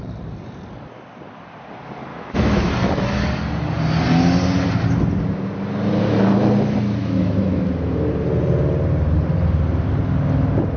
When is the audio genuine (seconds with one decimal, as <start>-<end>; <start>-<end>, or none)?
0.0-2.1; 2.7-7.0; 7.6-10.8